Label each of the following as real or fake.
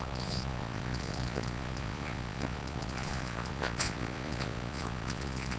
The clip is fake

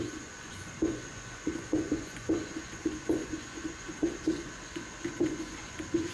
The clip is fake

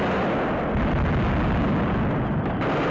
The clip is real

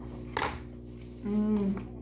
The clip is real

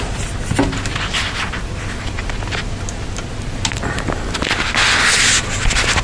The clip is real